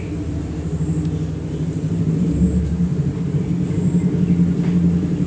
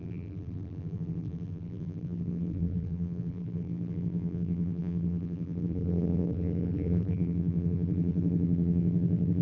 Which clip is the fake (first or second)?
second